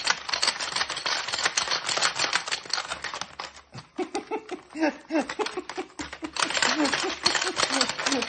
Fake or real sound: real